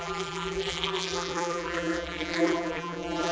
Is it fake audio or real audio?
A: fake